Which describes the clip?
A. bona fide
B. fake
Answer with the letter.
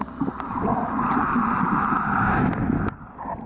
A